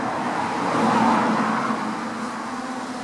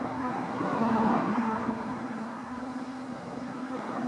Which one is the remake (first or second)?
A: second